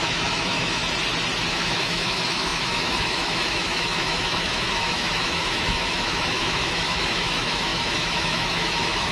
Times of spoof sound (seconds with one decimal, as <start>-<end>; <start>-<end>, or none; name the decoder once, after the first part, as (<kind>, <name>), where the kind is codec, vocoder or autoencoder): 0.0-0.8 (autoencoder, DAC-VAE); 1.5-9.1